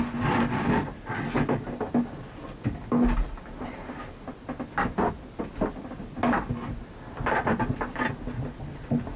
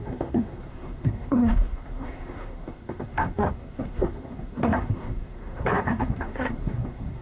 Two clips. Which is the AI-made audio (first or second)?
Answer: second